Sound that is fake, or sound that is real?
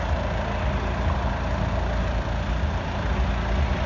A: real